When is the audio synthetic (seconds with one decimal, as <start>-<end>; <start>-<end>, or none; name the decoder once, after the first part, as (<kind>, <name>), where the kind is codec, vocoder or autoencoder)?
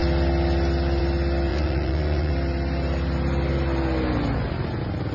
1.5-2.3 (vocoder, Vocos)